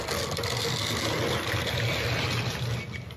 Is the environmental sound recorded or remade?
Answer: recorded